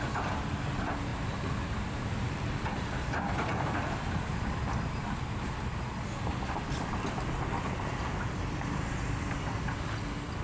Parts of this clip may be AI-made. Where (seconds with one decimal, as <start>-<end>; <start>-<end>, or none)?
1.1-5.4